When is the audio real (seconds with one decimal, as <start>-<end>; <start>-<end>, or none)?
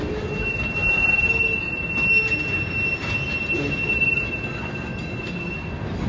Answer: 0.0-6.1